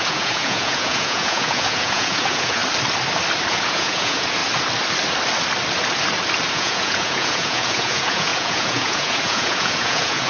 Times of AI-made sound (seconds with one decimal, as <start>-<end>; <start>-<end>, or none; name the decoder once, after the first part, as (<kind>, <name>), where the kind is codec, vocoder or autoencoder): 0.0-2.6 (vocoder, Vocos); 3.5-4.4; 6.5-10.3